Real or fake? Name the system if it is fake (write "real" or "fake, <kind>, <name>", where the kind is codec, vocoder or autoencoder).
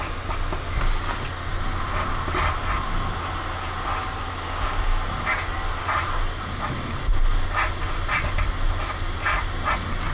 real